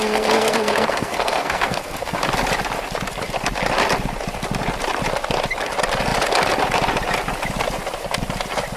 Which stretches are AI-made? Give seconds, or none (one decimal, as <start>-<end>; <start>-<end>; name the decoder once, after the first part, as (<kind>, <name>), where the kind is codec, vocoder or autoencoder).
0.0-2.2 (codec, SNAC)